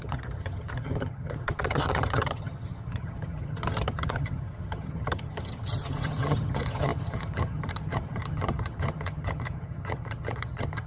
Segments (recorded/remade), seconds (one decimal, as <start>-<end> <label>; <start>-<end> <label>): 0.0-10.9 remade